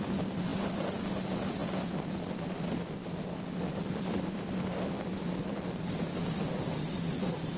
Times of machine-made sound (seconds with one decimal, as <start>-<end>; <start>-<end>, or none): none